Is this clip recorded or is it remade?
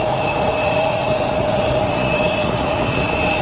remade